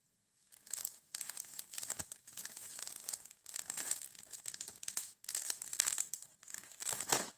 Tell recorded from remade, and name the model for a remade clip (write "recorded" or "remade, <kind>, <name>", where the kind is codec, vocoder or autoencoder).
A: remade, codec, DAC